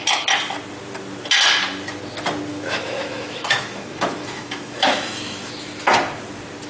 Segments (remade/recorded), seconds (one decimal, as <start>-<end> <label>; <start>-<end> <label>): 0.0-2.5 recorded; 2.5-5.5 remade; 5.5-6.7 recorded